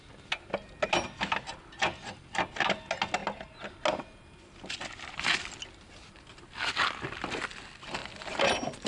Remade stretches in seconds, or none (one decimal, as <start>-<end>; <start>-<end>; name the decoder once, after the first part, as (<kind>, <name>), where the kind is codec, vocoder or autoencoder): none